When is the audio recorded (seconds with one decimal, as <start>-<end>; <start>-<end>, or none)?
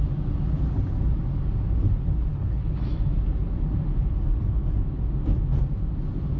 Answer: 0.0-2.3; 2.9-6.4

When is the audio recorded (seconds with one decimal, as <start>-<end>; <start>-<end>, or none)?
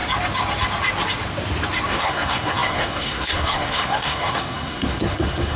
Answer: 0.0-1.9